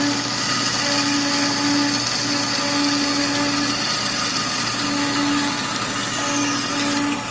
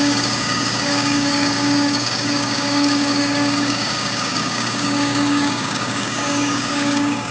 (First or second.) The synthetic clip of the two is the second